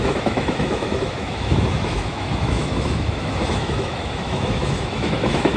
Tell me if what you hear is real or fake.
fake